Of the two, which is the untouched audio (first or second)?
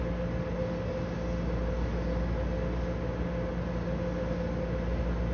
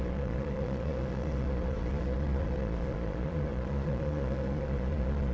first